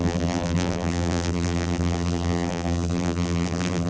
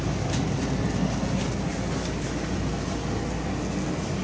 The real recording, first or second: second